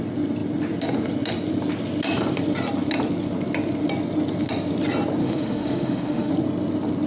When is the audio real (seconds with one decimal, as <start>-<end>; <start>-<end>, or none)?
0.0-5.2; 6.3-7.1